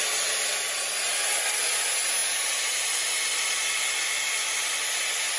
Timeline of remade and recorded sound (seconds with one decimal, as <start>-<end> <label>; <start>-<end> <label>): 0.0-5.4 recorded

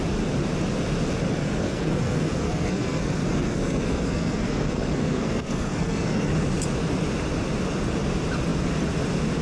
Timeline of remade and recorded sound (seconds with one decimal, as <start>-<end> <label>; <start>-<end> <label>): 0.0-1.4 recorded; 1.4-6.3 remade; 6.3-9.4 recorded

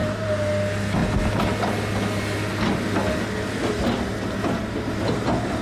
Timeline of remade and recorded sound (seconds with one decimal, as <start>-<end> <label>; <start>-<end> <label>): 0.0-0.5 remade; 0.5-5.6 recorded

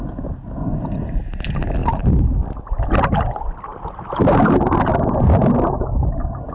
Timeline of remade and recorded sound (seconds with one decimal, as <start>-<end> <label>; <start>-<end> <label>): 0.0-6.5 recorded

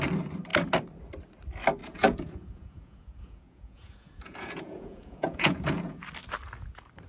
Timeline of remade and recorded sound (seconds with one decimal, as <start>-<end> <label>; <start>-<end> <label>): 0.0-1.8 recorded; 1.8-6.0 remade; 6.0-7.1 recorded

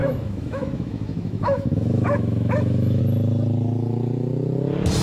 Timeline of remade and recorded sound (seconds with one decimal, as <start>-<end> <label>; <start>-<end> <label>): 0.0-3.0 remade; 3.0-5.0 recorded